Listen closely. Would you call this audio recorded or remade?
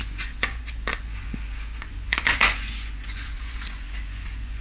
remade